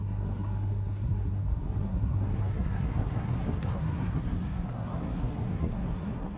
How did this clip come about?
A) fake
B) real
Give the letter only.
A